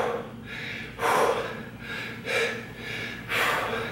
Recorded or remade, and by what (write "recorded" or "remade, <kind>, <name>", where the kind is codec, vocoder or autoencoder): recorded